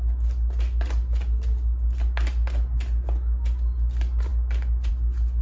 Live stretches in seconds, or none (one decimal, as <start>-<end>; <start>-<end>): 0.0-5.4